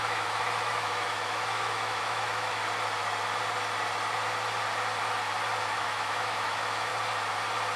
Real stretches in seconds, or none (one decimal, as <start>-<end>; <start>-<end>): 2.6-5.6; 6.9-7.8